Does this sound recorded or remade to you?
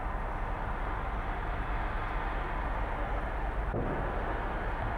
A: recorded